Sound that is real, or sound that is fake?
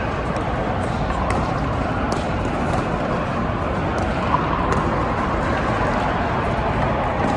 fake